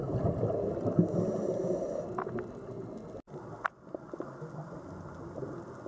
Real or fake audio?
real